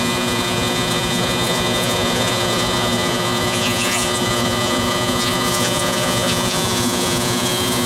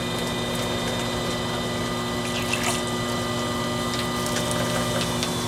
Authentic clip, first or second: second